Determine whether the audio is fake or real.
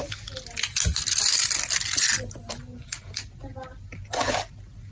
real